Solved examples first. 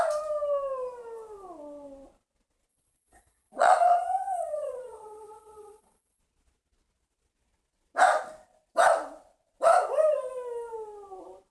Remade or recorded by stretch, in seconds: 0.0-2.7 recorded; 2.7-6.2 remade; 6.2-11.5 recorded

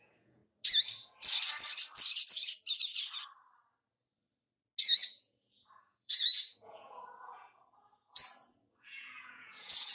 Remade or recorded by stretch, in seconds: 0.0-0.4 remade; 0.4-5.1 recorded; 5.1-9.9 remade

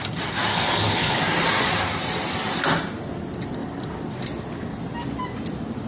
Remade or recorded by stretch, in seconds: 0.0-0.5 recorded; 0.5-1.2 remade; 1.2-5.9 recorded

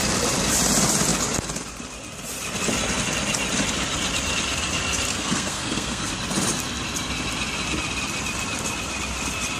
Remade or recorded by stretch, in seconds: 0.0-5.1 recorded; 5.1-6.1 remade; 6.1-9.6 recorded

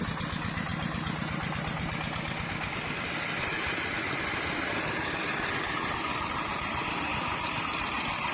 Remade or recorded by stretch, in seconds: 0.0-8.3 recorded

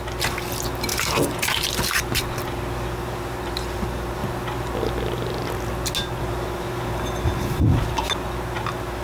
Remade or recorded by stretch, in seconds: 0.0-9.0 recorded

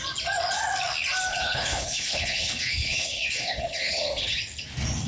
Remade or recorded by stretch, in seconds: 0.0-1.3 recorded; 1.3-4.4 remade; 4.4-5.1 recorded

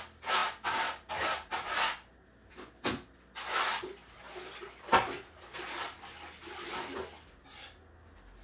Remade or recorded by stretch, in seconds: 0.0-8.4 recorded